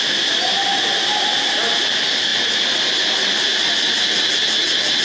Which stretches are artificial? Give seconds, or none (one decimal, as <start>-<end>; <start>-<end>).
none